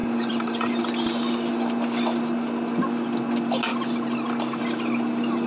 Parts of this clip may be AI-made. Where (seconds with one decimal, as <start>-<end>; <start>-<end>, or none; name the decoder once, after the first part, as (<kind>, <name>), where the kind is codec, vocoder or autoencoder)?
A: 0.0-0.8 (vocoder, BigVGAN v2)